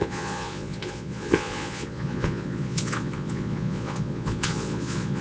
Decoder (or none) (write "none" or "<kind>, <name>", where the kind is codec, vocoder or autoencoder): vocoder, Vocos